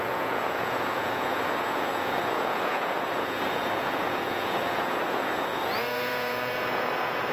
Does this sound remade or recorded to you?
remade